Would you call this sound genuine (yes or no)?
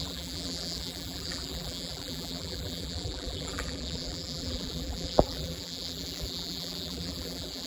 no